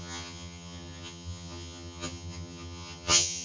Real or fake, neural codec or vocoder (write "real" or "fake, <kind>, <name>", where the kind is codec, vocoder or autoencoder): fake, vocoder, HiFi-GAN